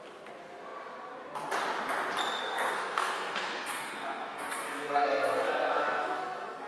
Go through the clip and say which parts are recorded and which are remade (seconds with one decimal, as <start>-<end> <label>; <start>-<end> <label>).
0.0-2.4 recorded; 2.4-6.7 remade